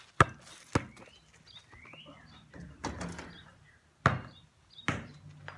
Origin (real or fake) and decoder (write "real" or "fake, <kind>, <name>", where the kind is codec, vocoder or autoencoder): real